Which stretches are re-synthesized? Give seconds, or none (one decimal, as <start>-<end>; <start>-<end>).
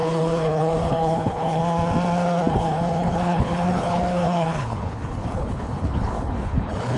0.0-1.6; 2.5-7.0